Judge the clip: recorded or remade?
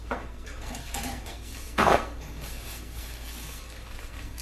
remade